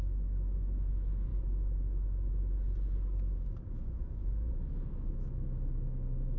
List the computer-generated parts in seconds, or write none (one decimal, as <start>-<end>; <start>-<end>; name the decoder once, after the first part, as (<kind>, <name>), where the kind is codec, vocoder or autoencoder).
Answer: 0.0-1.3 (autoencoder, DAC-VAE); 3.8-6.4